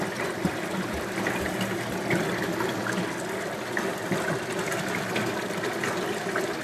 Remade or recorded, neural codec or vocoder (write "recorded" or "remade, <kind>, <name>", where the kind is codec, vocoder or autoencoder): recorded